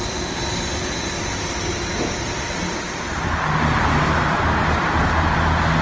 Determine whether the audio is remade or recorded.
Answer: recorded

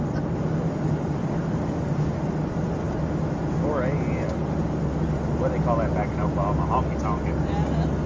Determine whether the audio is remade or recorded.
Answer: recorded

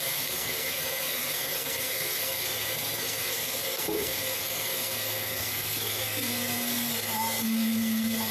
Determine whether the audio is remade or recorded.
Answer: remade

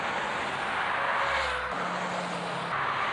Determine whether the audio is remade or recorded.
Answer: recorded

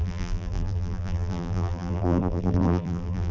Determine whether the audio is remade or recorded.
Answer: remade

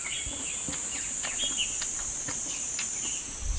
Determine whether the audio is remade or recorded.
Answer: recorded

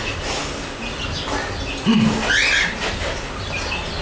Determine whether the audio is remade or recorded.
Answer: recorded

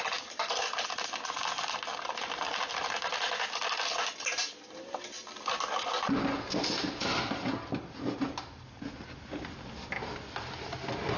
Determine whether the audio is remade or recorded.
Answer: recorded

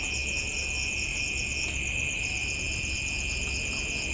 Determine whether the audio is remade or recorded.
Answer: recorded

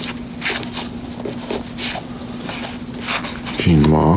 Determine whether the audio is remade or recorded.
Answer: recorded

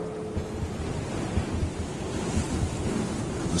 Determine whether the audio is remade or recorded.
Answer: recorded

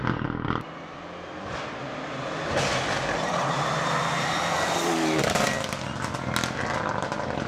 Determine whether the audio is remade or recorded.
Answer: recorded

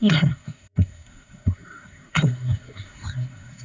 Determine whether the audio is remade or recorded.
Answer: remade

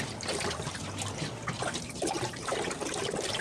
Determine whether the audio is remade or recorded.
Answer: recorded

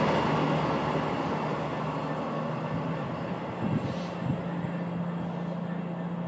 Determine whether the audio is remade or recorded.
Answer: recorded